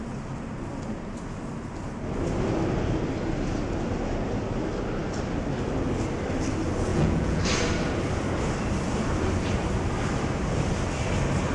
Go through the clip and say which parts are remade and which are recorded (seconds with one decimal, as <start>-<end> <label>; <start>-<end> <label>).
0.0-6.9 recorded; 6.9-7.4 remade; 7.4-11.5 recorded

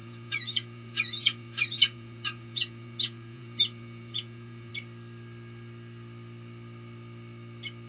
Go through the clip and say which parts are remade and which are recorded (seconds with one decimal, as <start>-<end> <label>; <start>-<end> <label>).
0.0-4.7 remade; 4.7-7.9 recorded